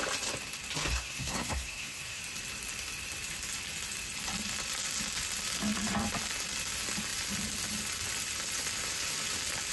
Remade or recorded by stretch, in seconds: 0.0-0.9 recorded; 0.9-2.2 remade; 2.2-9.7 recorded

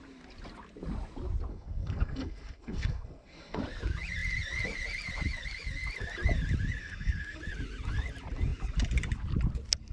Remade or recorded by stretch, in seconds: 0.0-1.5 recorded; 1.5-3.6 remade; 3.6-6.8 recorded; 6.8-7.4 remade; 7.4-9.9 recorded

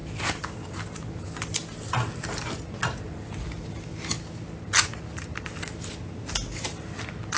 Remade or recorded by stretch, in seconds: 0.0-7.4 recorded

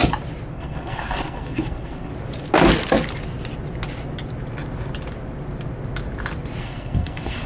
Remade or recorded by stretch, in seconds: 0.0-0.5 recorded; 0.5-2.1 remade; 2.1-6.6 recorded; 6.6-7.5 remade

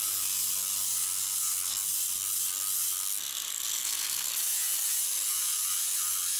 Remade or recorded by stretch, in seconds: 0.0-3.8 recorded; 3.8-4.3 remade; 4.3-6.4 recorded

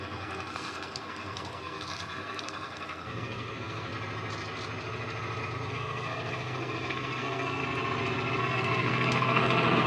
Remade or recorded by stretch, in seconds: 0.0-3.9 remade; 3.9-5.7 recorded; 5.7-7.6 remade; 7.6-8.4 recorded; 8.4-9.9 remade